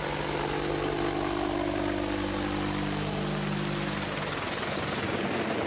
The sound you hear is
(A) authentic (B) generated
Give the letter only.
A